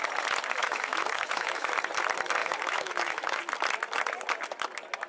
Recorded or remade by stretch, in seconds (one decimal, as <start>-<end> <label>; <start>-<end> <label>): 0.0-0.6 recorded; 0.6-1.7 remade; 1.7-2.4 recorded; 2.4-3.4 remade; 3.4-5.1 recorded